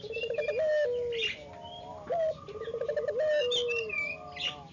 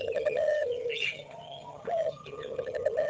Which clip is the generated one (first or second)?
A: second